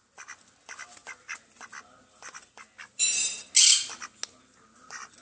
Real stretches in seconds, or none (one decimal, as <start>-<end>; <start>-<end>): 0.0-5.2